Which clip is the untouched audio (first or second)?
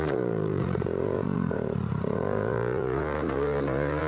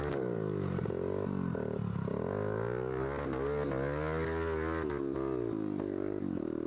second